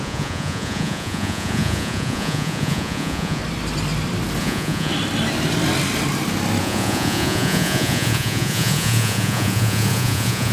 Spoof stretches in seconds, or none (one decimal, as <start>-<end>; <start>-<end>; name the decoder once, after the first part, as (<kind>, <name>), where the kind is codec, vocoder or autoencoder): 0.0-3.4 (vocoder, Vocos); 4.4-4.9; 6.6-10.5